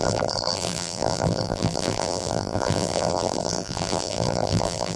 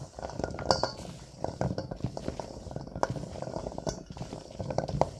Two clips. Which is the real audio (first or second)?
second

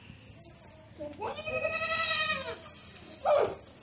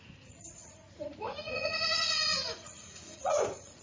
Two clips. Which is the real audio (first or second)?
first